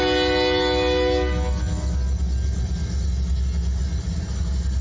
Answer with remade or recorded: recorded